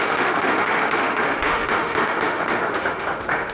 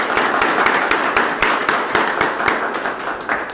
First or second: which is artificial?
first